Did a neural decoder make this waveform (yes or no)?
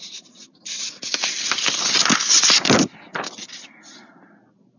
no